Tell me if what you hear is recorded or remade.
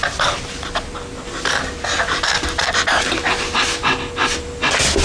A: recorded